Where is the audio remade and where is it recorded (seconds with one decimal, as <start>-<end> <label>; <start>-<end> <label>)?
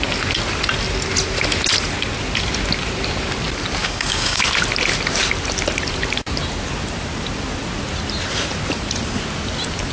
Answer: 0.0-3.8 recorded; 3.8-4.4 remade; 4.4-9.9 recorded